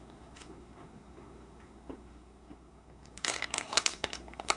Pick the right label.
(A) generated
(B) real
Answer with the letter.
A